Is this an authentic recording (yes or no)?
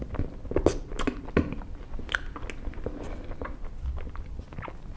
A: yes